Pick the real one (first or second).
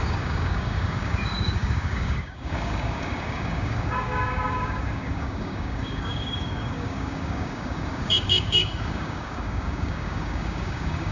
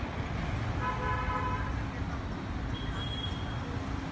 second